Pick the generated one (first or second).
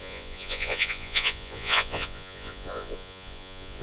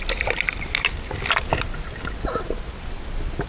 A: first